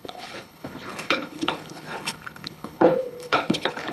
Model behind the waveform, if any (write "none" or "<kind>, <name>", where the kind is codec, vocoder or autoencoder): codec, HILCodec